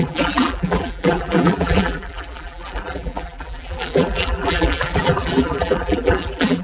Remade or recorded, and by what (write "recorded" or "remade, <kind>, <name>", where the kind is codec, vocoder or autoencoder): remade, vocoder, BigVGAN v2